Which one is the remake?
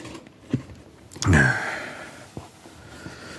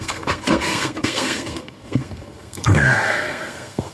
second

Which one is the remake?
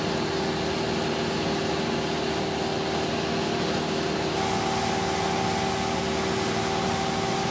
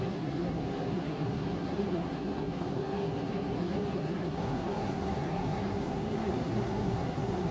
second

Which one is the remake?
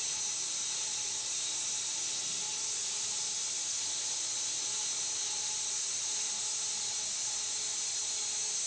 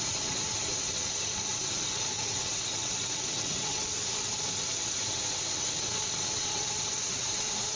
second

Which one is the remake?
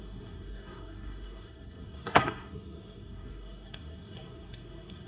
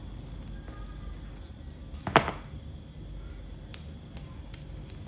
first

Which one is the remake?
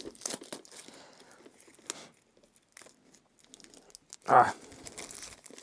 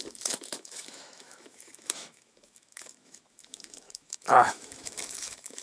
second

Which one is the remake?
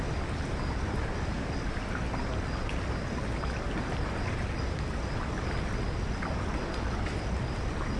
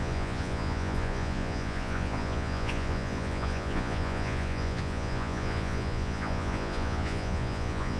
second